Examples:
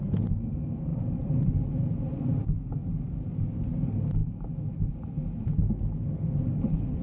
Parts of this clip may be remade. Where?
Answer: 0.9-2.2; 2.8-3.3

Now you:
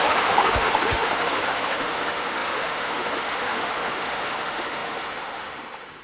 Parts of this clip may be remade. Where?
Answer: 0.0-6.0

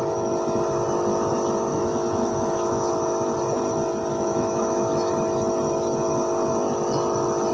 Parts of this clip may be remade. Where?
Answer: 1.7-2.9; 4.1-5.1

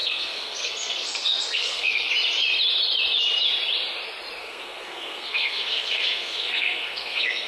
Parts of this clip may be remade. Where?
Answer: 0.0-2.1; 4.4-7.5

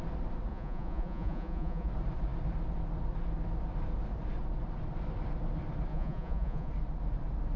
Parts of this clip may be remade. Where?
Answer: 0.5-1.9; 5.9-6.7